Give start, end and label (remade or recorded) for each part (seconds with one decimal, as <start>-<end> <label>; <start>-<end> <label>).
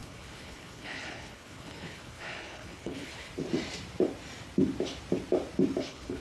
0.0-3.3 remade; 3.3-5.8 recorded; 5.8-6.2 remade